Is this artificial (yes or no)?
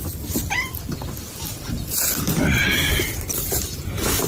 no